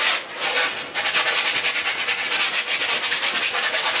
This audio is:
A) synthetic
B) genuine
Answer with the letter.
B